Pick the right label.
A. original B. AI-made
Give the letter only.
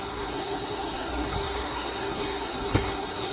B